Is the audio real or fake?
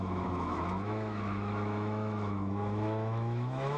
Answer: fake